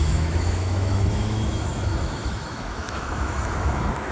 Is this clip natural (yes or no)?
no